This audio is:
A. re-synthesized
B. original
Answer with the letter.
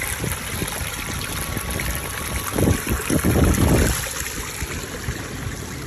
B